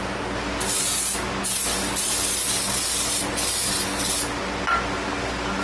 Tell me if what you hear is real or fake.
real